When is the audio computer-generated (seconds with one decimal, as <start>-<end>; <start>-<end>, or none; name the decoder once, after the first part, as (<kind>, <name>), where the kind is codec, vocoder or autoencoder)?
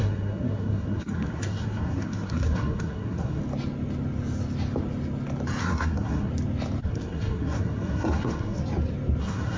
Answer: 0.0-3.4 (codec, SNAC); 5.6-6.3; 6.8-8.6; 9.2-9.6